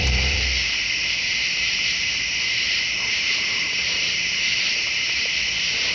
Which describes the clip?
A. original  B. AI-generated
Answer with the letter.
B